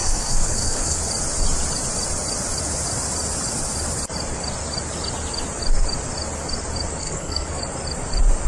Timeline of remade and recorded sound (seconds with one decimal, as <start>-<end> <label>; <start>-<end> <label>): 0.0-1.0 remade; 1.0-7.0 recorded; 7.0-7.6 remade; 7.6-8.5 recorded